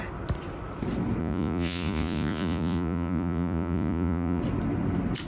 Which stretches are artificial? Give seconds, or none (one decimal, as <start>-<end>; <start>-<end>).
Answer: 1.2-4.4